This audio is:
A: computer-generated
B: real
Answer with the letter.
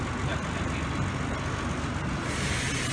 B